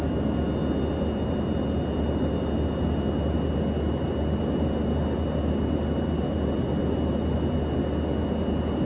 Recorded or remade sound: recorded